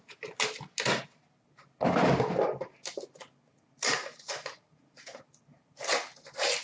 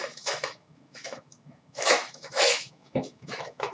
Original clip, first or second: first